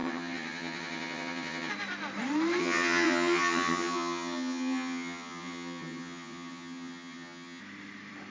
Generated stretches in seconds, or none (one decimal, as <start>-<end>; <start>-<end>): 0.0-1.7; 2.6-7.6